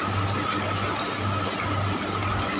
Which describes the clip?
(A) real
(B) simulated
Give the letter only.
A